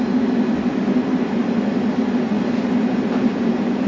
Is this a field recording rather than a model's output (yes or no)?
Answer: yes